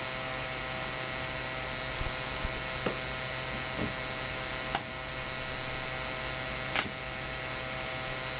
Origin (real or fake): real